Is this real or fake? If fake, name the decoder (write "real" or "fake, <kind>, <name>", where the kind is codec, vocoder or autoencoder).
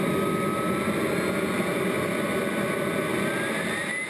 real